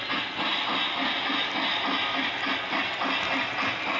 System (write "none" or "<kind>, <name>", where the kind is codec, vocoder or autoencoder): none